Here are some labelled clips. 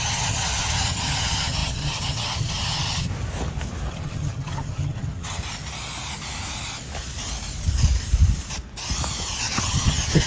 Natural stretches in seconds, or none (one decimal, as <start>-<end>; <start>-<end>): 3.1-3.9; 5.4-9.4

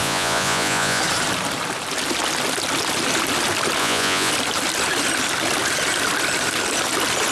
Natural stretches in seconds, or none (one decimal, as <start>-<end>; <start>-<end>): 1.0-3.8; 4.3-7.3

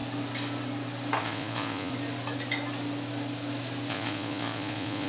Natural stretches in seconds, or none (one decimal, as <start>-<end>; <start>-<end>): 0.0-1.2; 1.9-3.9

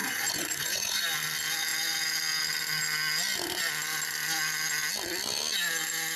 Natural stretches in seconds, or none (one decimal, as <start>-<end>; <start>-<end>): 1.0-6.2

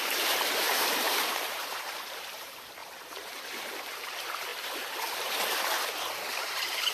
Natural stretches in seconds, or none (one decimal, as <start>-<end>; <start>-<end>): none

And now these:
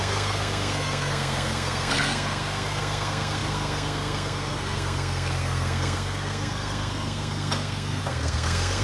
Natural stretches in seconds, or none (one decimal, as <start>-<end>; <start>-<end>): none